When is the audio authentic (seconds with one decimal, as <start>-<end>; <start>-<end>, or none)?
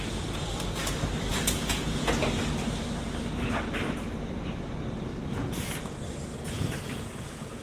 0.0-1.3; 2.1-6.3